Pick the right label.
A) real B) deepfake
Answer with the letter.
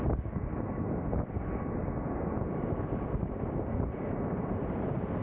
A